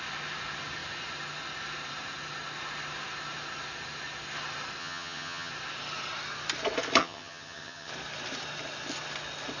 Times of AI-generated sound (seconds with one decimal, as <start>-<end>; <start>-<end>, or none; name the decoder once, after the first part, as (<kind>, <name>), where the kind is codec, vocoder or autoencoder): 4.8-5.5 (vocoder, HiFi-GAN); 7.0-7.9